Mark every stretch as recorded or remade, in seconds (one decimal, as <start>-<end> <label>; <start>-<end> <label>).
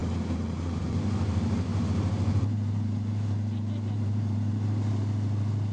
0.0-0.8 remade; 0.8-1.7 recorded; 1.7-4.9 remade; 4.9-5.7 recorded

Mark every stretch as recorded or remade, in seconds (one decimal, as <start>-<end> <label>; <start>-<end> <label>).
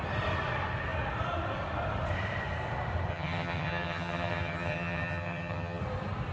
0.0-3.1 recorded; 3.1-5.8 remade; 5.8-6.3 recorded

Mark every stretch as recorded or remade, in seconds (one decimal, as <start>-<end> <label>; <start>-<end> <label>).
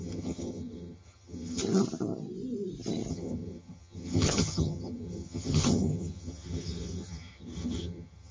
0.0-1.6 remade; 1.6-3.1 recorded; 3.1-8.3 remade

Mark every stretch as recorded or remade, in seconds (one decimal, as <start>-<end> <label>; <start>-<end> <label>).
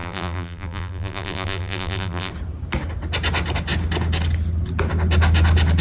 0.0-2.3 remade; 2.3-5.8 recorded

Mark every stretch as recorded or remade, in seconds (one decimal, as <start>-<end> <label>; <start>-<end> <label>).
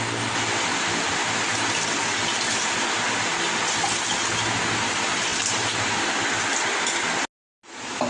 0.0-8.1 recorded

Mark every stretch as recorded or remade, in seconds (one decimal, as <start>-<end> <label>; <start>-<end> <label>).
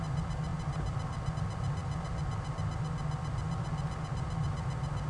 0.0-5.1 recorded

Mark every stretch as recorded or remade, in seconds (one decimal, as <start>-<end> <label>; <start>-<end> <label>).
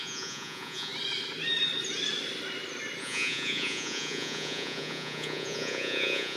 0.0-0.9 remade; 0.9-3.0 recorded; 3.0-6.4 remade